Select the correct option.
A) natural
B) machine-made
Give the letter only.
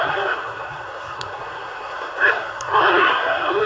B